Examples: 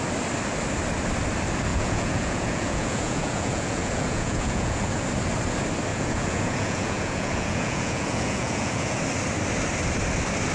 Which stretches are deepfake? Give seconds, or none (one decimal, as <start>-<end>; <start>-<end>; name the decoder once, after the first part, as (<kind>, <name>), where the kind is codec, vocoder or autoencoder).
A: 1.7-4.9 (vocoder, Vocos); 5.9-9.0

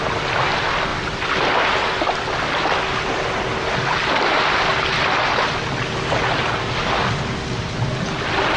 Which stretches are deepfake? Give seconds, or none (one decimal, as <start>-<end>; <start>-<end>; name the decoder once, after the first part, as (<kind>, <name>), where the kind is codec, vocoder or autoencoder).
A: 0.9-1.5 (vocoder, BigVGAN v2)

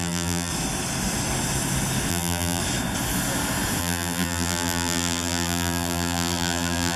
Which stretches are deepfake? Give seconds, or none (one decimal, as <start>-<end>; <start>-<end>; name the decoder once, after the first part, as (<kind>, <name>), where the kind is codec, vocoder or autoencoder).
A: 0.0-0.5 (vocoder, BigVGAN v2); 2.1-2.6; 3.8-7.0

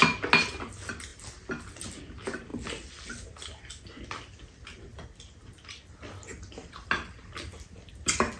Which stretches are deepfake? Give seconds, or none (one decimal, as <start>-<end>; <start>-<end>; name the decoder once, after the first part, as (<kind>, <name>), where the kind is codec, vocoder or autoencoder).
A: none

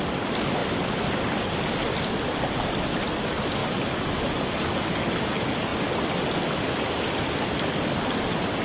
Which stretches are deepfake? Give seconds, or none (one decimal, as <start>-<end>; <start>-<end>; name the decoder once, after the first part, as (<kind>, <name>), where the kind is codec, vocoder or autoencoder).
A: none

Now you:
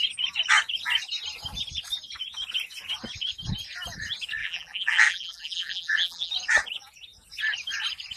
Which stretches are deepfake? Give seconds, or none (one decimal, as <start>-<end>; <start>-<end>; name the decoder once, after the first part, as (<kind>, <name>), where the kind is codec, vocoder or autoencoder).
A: 4.4-6.3 (vocoder, BigVGAN v2)

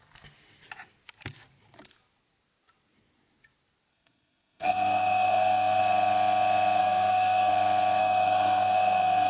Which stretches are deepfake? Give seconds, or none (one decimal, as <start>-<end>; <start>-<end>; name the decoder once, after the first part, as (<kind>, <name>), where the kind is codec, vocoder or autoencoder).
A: 3.9-5.8 (codec, SNAC); 6.8-7.5; 8.0-9.3

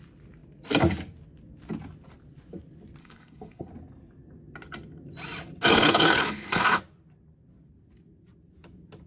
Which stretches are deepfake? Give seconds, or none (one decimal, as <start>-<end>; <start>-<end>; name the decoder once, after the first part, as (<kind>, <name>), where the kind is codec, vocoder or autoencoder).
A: 3.0-3.7 (codec, HILCodec); 5.7-6.8